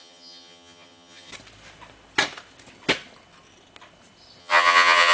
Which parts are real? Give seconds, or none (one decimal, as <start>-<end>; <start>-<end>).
1.3-4.4